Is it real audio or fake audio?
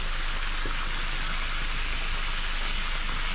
real